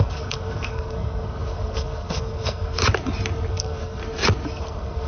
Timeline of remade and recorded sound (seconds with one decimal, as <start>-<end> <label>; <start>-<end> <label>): 0.0-2.8 remade; 2.8-3.5 recorded; 3.5-4.0 remade; 4.0-4.5 recorded; 4.5-5.1 remade